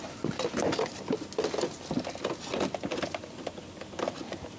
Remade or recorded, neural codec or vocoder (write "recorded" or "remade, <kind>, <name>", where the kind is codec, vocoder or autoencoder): recorded